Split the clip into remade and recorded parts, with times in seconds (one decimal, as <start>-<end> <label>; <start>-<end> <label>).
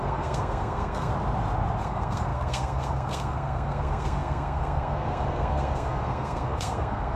0.0-1.1 remade; 1.1-1.8 recorded; 1.8-7.2 remade